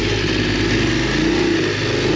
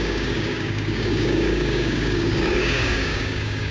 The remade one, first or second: second